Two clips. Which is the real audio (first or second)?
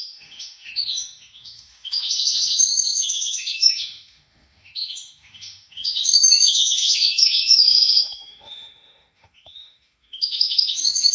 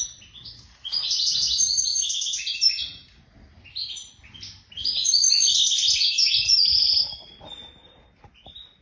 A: second